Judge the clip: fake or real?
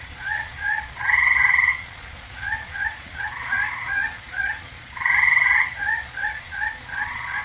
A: fake